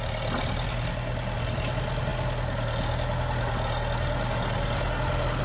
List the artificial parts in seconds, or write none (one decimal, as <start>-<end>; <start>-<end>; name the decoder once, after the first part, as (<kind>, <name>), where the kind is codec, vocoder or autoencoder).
none